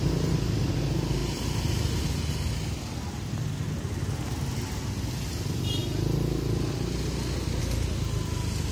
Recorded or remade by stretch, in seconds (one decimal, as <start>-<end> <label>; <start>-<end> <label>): 0.0-8.7 recorded